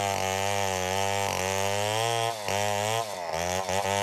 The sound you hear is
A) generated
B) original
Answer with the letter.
B